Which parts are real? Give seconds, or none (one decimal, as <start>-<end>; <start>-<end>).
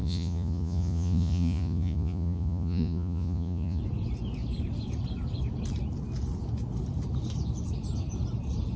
3.8-8.8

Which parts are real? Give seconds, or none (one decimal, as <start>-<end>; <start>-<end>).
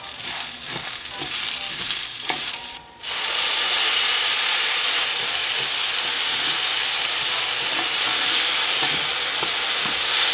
0.0-2.1; 5.0-10.3